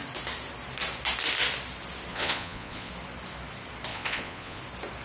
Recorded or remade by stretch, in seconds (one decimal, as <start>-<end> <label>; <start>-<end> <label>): 0.0-2.1 recorded; 2.1-2.9 remade; 2.9-3.9 recorded; 3.9-4.6 remade; 4.6-5.0 recorded